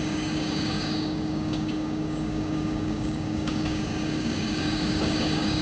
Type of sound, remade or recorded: remade